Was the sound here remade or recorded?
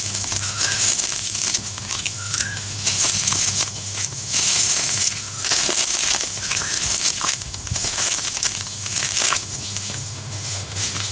remade